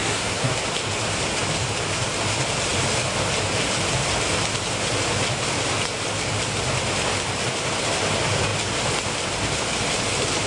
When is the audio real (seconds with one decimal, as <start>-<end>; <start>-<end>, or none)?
0.5-10.5